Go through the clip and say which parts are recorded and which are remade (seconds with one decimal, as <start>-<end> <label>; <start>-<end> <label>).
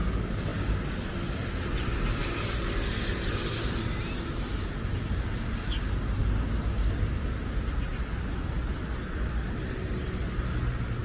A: 0.0-11.0 recorded